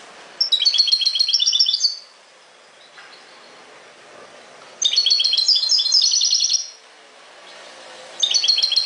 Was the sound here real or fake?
real